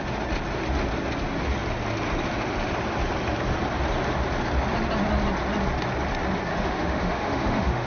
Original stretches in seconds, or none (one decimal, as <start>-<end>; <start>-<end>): 0.0-6.5